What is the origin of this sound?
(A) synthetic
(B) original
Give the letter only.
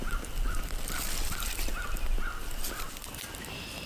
B